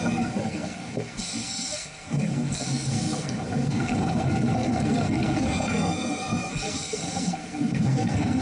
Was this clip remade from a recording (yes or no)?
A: yes